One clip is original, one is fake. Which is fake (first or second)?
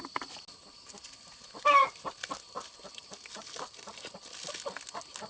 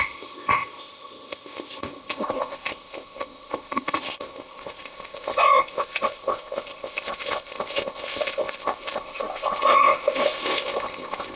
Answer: second